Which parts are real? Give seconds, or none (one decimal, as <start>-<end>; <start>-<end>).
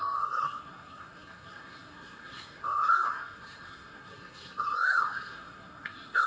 none